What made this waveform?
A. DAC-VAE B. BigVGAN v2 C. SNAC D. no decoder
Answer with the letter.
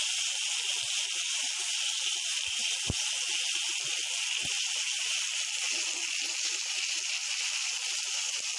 D